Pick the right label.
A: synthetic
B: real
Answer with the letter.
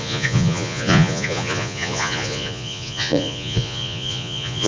A